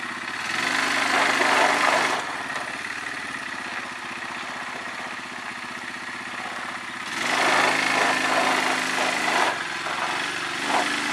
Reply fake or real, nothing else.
real